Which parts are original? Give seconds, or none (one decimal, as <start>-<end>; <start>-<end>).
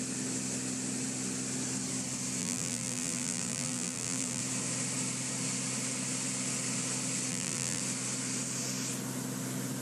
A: 0.0-2.4; 4.4-7.3; 7.8-9.8